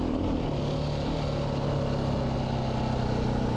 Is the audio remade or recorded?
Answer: recorded